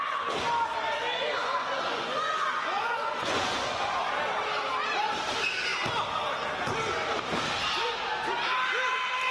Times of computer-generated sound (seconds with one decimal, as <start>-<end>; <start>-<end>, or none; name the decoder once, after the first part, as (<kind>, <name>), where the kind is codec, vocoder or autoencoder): 1.4-4.0 (vocoder, Vocos)